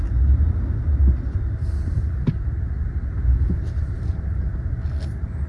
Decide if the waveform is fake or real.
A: real